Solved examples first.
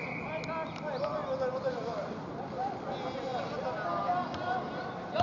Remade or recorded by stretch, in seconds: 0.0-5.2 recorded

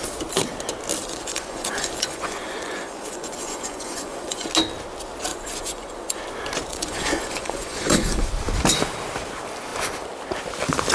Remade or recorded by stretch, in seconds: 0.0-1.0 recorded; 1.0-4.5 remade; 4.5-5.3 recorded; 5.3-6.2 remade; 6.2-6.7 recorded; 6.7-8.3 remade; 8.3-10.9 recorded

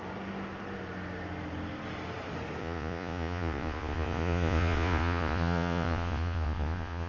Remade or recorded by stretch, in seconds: 0.0-2.6 recorded; 2.6-7.1 remade

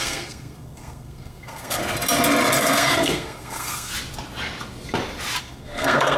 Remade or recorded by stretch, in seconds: 0.0-1.8 remade; 1.8-2.6 recorded; 2.6-3.9 remade; 3.9-5.4 recorded; 5.4-6.2 remade

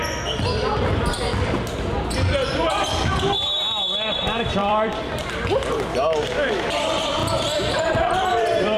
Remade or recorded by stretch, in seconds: 0.0-4.6 recorded; 4.6-5.2 remade; 5.2-7.2 recorded; 7.2-8.8 remade

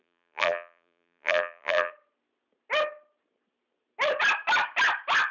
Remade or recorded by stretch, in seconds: 0.0-1.9 remade; 1.9-5.3 recorded

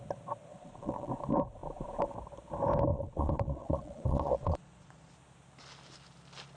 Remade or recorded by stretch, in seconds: 0.0-0.5 recorded; 0.5-1.1 remade; 1.1-2.9 recorded; 2.9-5.1 remade; 5.1-6.6 recorded

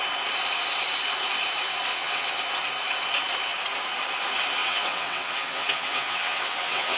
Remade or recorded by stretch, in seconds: 0.0-1.9 recorded; 1.9-2.4 remade; 2.4-4.6 recorded; 4.6-7.0 remade